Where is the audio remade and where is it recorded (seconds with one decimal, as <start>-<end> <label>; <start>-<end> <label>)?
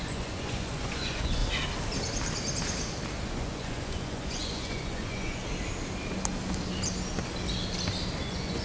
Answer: 0.0-1.4 remade; 1.4-3.2 recorded; 3.2-5.4 remade; 5.4-8.2 recorded; 8.2-8.6 remade